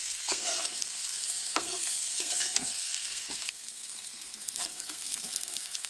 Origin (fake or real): fake